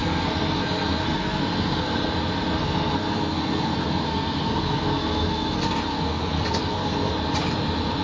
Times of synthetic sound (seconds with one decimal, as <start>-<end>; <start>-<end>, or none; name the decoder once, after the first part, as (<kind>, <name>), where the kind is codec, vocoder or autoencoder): 0.0-2.1 (codec, SNAC); 2.5-7.1